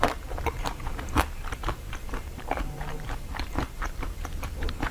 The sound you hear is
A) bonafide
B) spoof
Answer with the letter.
B